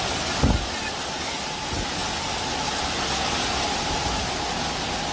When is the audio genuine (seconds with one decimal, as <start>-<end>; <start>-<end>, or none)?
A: 0.0-5.1

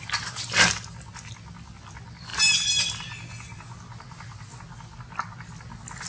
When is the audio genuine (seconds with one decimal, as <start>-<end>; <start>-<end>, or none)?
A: 0.0-6.1

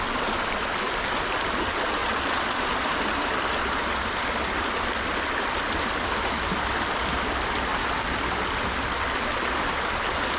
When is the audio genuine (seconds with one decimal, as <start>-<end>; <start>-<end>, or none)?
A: 0.0-2.0; 2.6-10.4

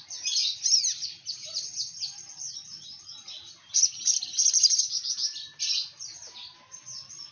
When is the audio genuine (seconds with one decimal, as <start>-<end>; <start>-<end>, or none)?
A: 0.0-7.3

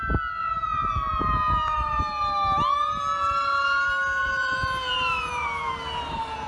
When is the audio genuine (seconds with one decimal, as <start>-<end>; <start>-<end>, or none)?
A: 0.0-0.4; 2.0-4.2; 5.7-6.5

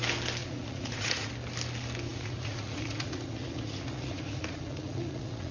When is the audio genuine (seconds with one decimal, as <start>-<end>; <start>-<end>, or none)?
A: 0.0-0.4; 1.3-2.1

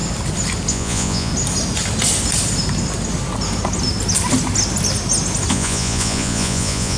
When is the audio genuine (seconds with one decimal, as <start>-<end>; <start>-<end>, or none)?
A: 0.0-0.7; 1.3-5.5